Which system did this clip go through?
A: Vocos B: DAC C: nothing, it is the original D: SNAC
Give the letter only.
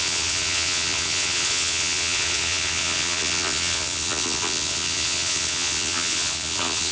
A